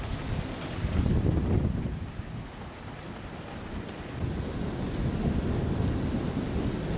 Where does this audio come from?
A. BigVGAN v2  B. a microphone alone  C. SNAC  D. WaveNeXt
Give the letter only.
B